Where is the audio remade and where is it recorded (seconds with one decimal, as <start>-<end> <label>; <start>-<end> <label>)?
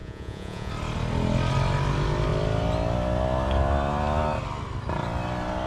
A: 0.0-0.7 remade; 0.7-5.7 recorded